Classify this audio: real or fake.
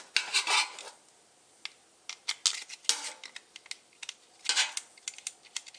real